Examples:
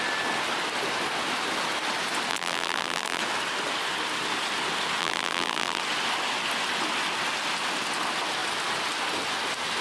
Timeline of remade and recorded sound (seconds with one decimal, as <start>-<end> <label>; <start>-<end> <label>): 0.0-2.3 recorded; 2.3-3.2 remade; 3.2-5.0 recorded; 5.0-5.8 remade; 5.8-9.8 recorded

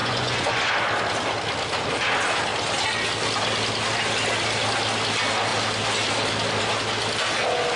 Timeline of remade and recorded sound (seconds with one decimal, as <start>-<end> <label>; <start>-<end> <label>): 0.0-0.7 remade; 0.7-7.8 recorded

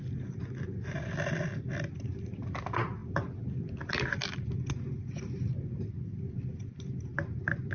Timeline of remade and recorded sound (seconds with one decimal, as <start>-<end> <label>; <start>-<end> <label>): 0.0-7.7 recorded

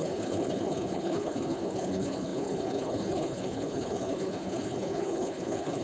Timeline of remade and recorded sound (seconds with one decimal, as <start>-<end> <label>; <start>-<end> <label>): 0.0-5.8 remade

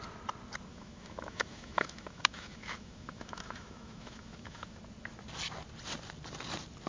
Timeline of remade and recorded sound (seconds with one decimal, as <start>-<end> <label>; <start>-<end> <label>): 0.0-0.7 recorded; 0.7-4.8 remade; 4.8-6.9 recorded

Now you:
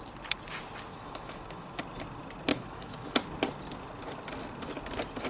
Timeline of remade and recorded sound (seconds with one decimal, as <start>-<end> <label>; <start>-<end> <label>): 0.0-0.9 recorded; 0.9-1.8 remade; 1.8-2.5 recorded; 2.5-3.1 remade; 3.1-5.3 recorded

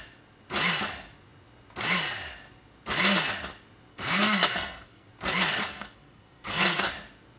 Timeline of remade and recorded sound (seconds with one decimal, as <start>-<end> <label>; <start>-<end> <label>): 0.0-3.9 recorded; 3.9-5.1 remade; 5.1-5.6 recorded; 5.6-6.9 remade; 6.9-7.4 recorded